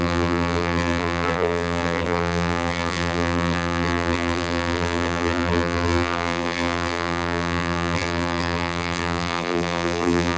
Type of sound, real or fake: fake